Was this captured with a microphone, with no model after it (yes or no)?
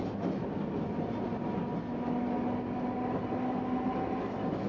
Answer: yes